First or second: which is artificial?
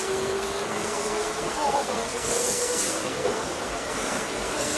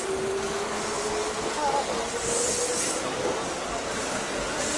first